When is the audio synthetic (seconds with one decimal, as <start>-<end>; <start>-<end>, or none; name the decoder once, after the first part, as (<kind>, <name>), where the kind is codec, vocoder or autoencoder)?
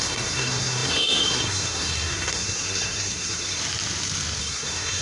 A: 0.0-3.6 (codec, SNAC); 4.4-5.0